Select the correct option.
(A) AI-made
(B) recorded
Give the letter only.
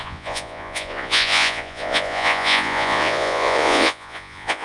A